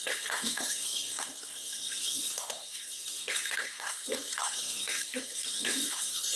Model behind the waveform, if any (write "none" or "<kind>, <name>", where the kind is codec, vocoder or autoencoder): codec, SNAC